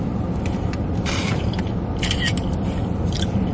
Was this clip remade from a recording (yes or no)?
no